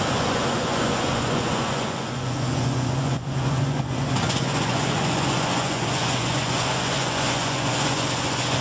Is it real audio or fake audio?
fake